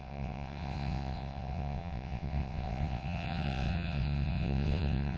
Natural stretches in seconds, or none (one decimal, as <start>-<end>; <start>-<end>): none